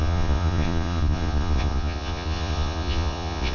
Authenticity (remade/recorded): remade